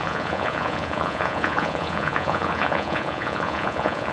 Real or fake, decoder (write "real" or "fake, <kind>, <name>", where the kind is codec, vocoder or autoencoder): fake, vocoder, Vocos